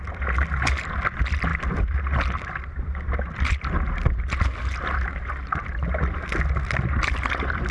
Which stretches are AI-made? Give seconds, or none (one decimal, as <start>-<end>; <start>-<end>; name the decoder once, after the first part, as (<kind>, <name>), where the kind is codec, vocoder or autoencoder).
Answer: none